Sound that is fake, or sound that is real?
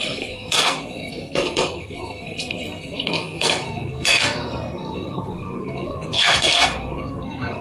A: fake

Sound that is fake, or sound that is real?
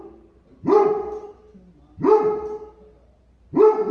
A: real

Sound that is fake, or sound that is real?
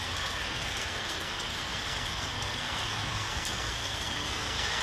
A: fake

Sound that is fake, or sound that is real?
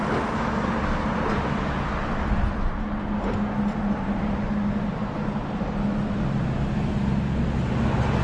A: real